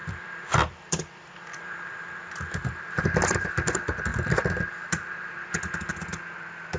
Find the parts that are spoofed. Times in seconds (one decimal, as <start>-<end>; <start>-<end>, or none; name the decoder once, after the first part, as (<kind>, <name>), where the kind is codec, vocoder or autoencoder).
0.0-3.0 (vocoder, BigVGAN v2); 4.1-5.6